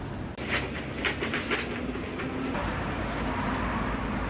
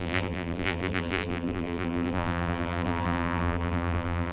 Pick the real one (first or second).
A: first